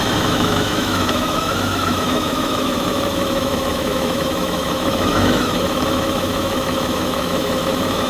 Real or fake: fake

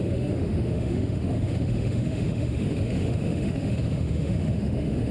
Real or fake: fake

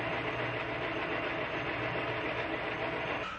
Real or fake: real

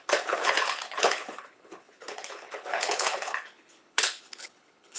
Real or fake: fake